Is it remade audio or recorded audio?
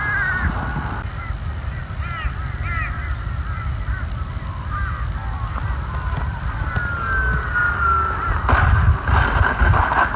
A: recorded